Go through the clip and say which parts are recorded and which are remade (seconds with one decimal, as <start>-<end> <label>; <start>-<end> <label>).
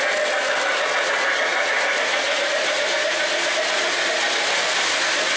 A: 0.0-1.5 recorded; 1.5-3.7 remade; 3.7-5.4 recorded